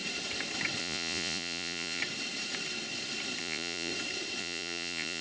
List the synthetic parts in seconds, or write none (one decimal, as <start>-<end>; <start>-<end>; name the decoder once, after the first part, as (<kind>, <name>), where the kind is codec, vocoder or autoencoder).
0.8-2.0 (vocoder, Vocos); 3.4-3.9; 4.4-5.2